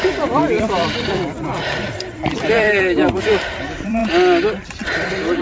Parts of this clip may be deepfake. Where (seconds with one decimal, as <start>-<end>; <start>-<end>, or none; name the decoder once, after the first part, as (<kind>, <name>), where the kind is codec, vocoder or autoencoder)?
0.0-4.0 (vocoder, BigVGAN v2); 4.7-5.4